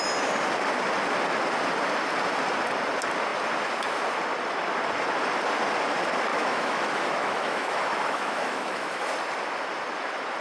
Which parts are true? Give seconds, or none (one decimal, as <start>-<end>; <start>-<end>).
0.0-6.3; 9.1-10.4